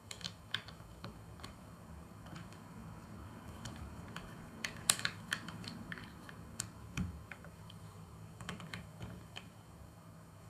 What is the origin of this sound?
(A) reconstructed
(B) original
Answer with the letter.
A